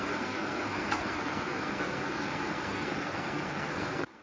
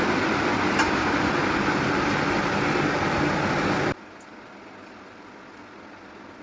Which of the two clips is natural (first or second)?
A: second